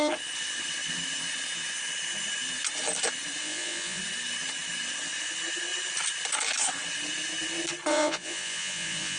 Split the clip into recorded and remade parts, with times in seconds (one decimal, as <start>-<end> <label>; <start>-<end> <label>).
0.0-3.4 recorded; 3.4-4.0 remade; 4.0-7.9 recorded; 7.9-9.2 remade